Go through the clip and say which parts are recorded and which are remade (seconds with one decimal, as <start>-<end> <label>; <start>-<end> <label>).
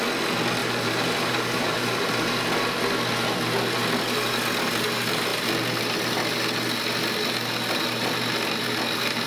0.0-0.6 recorded; 0.6-2.1 remade; 2.1-9.3 recorded